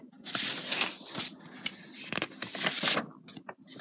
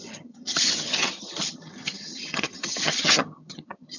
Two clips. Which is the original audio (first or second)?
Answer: first